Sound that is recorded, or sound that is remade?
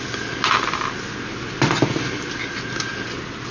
recorded